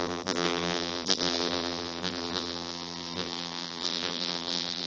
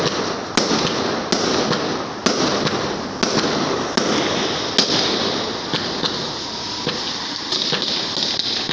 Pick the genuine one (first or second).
second